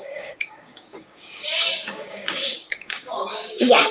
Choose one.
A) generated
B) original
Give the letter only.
A